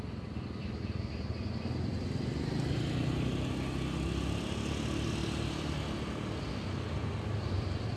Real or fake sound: real